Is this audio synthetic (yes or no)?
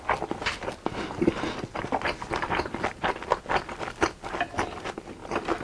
no